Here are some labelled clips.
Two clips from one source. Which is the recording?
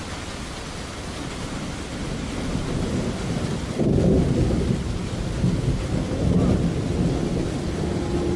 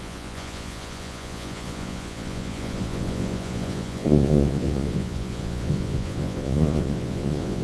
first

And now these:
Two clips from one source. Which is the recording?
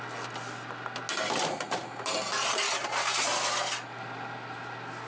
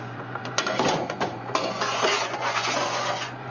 first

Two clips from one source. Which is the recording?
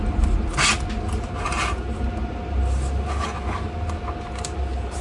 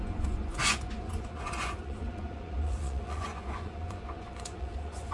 first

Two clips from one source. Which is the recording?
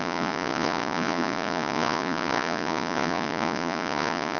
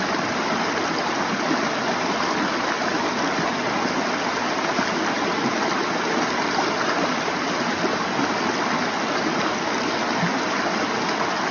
second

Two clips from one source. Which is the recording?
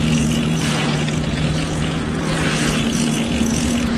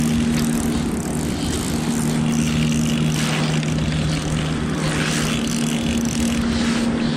second